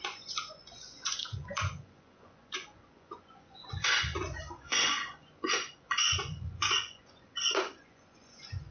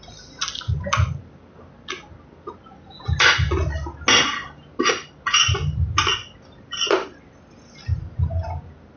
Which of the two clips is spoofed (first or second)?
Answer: first